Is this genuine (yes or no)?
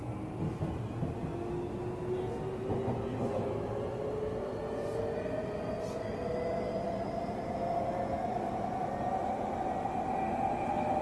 yes